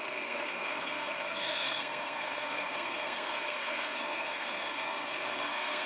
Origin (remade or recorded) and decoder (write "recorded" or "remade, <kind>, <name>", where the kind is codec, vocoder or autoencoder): remade, codec, SNAC